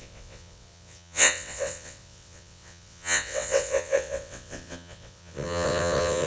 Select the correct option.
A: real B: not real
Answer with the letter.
B